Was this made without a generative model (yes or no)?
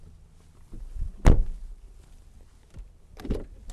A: yes